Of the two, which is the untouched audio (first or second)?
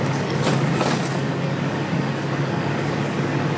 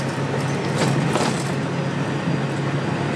second